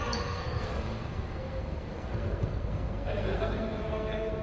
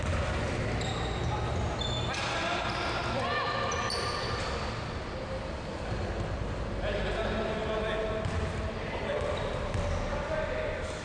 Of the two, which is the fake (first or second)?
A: first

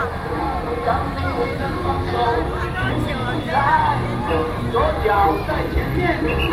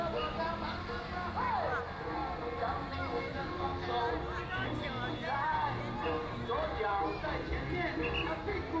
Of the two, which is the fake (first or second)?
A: first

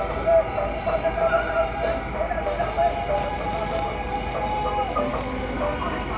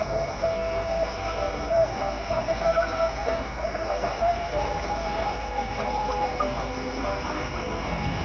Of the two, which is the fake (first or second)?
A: second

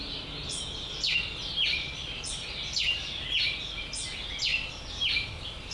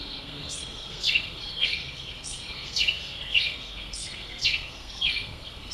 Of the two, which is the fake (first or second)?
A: second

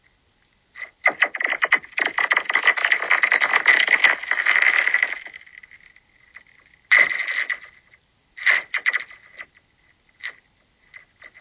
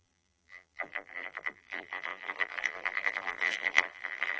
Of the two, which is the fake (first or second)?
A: second